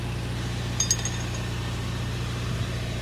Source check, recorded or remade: recorded